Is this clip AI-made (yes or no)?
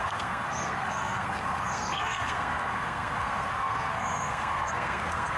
yes